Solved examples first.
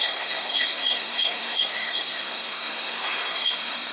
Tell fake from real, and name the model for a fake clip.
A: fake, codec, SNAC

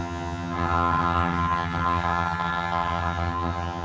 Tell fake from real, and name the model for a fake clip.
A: fake, vocoder, HiFi-GAN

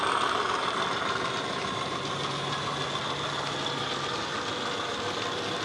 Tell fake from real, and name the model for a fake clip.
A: real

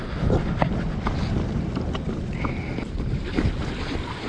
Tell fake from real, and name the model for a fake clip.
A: real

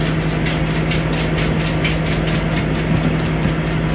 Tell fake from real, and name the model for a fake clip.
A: real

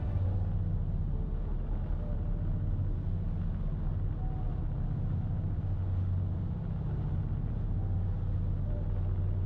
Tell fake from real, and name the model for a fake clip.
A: real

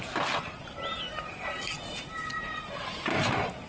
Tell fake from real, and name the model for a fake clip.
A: real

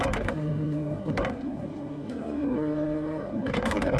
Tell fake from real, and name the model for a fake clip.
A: fake, codec, SNAC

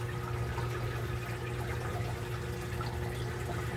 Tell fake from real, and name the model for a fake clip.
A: real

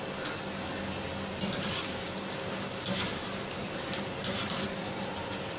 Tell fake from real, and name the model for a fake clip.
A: real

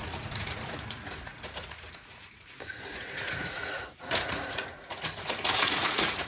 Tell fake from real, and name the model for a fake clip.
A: fake, vocoder, Vocos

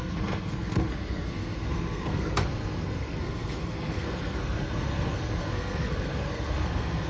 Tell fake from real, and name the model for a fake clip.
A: fake, codec, SNAC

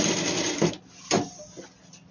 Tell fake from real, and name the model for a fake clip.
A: real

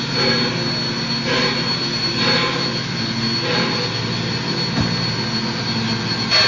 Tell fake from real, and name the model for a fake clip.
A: real